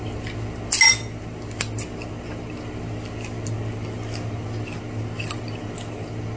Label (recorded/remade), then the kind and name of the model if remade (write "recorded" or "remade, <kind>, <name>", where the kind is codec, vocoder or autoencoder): recorded